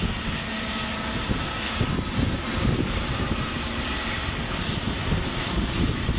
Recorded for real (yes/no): no